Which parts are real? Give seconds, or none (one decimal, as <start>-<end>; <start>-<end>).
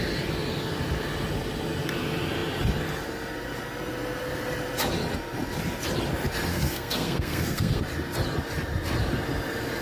0.0-6.5; 7.8-9.8